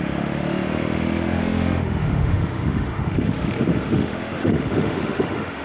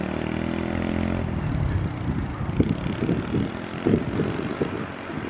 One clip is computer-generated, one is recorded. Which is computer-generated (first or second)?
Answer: first